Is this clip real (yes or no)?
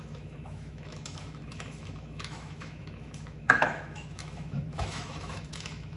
no